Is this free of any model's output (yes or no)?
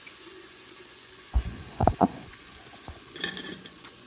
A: no